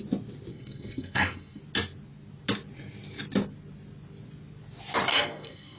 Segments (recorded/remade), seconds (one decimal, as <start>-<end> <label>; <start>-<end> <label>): 0.0-0.5 recorded; 0.5-1.6 remade; 1.6-5.1 recorded; 5.1-5.8 remade